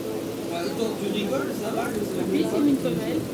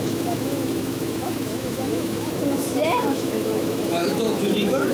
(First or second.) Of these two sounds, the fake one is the second